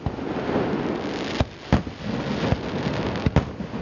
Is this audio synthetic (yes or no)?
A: no